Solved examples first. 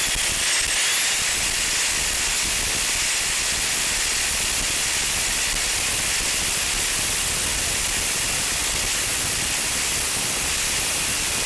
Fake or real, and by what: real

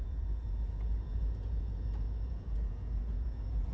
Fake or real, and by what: fake, vocoder, Vocos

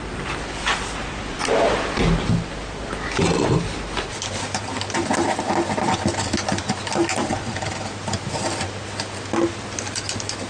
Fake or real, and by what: real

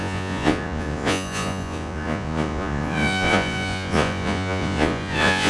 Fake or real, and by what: fake, vocoder, Vocos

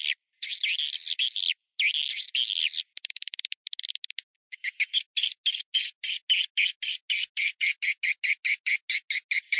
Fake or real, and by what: real